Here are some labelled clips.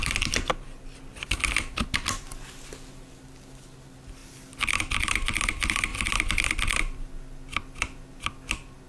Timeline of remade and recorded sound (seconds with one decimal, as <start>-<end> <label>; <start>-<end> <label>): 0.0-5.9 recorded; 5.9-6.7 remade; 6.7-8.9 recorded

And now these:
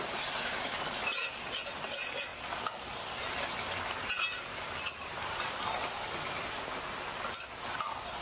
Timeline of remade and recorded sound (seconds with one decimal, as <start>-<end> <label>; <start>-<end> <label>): 0.0-8.2 recorded

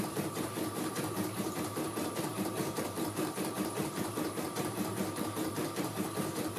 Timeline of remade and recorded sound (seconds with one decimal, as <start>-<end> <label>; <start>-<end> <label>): 0.0-6.6 remade